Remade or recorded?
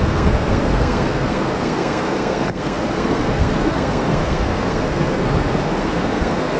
remade